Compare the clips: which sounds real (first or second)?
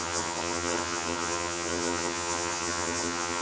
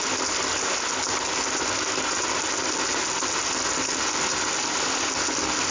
second